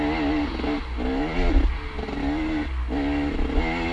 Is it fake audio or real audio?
real